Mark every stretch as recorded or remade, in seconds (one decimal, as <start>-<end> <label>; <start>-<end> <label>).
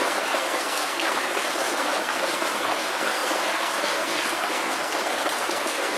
0.0-6.0 remade